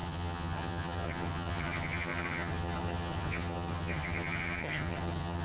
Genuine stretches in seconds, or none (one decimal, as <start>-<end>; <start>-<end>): none